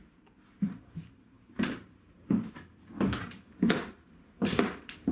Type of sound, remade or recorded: remade